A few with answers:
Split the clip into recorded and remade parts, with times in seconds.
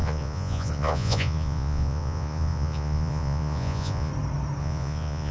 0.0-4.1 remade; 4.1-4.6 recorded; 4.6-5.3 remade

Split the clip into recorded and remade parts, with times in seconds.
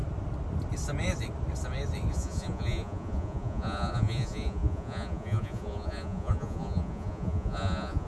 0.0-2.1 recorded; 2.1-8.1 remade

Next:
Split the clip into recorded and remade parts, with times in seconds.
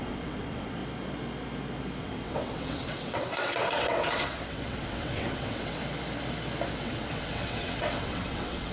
0.0-0.8 remade; 0.8-2.0 recorded; 2.0-5.8 remade; 5.8-6.7 recorded; 6.7-8.7 remade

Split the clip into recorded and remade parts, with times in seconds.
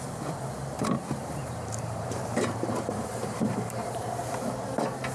0.0-1.4 recorded; 1.4-4.0 remade; 4.0-5.1 recorded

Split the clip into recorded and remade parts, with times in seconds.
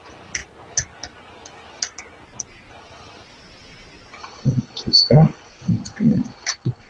0.0-4.2 recorded; 4.2-6.9 remade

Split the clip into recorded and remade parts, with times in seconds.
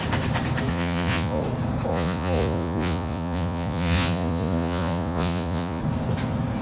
0.0-0.7 recorded; 0.7-1.4 remade; 1.4-1.9 recorded; 1.9-5.8 remade; 5.8-6.6 recorded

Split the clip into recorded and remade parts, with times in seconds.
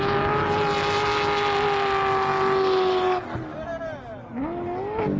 0.0-5.2 recorded